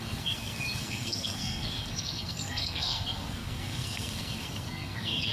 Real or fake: fake